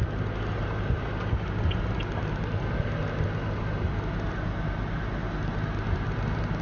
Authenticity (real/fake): real